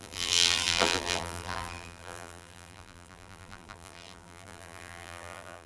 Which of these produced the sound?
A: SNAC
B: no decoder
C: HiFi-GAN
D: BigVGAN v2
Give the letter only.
D